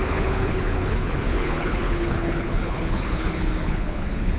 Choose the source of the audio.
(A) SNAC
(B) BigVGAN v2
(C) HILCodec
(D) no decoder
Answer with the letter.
C